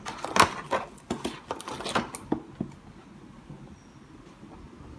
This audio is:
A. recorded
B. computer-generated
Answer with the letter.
A